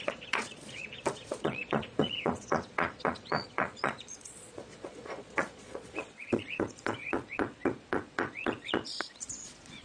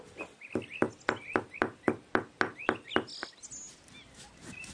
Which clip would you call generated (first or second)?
first